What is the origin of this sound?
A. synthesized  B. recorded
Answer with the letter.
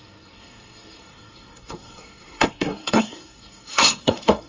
A